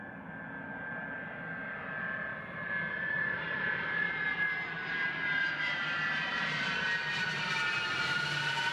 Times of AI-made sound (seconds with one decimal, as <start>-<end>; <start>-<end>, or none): 2.3-7.5